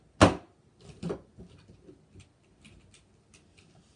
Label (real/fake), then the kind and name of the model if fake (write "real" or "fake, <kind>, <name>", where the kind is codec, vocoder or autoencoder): real